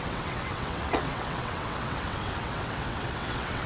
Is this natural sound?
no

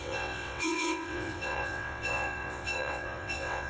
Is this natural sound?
no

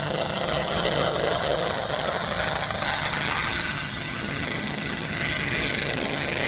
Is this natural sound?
no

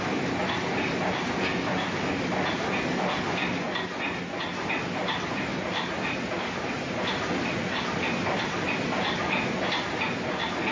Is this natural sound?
yes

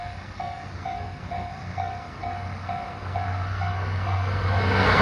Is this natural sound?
no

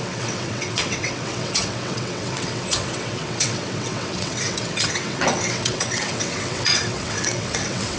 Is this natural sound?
no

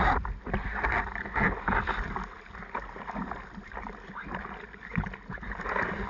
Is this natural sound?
yes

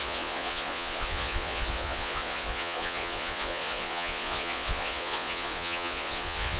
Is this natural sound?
no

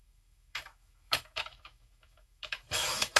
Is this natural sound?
no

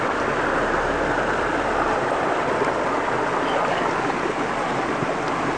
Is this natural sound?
yes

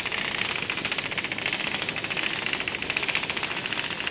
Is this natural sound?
yes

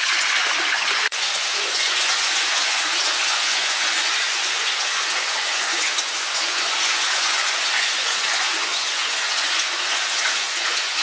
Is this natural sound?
no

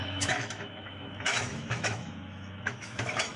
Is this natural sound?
no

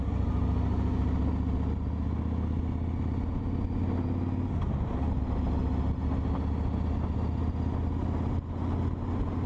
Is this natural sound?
yes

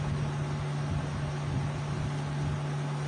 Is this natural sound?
yes